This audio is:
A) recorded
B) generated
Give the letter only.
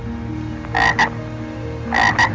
A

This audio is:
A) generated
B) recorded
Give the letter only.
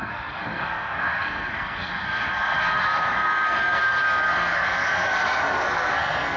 A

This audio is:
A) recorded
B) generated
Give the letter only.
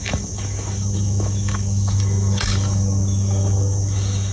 B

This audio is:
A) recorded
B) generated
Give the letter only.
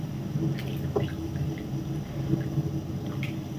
A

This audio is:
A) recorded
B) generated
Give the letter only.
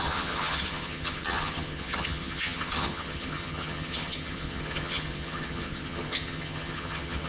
B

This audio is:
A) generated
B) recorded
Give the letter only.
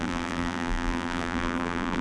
A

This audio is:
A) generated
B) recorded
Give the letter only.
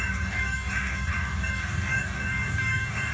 A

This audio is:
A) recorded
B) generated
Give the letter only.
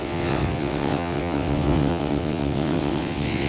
B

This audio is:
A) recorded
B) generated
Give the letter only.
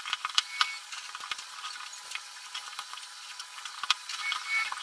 A